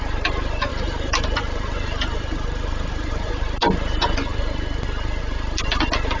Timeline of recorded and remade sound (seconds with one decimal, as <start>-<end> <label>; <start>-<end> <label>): 0.0-0.7 recorded; 0.7-3.3 remade; 3.3-6.2 recorded